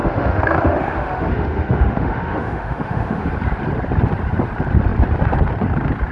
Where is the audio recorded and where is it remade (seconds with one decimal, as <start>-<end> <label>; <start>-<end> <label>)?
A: 0.0-3.3 remade; 3.3-6.1 recorded